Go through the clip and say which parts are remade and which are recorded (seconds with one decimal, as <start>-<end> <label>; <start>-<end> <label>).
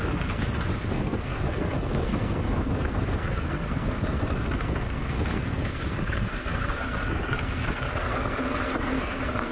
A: 0.0-9.5 remade